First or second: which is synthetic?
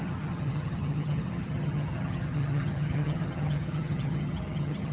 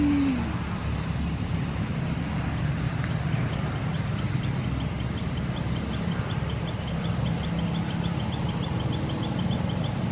first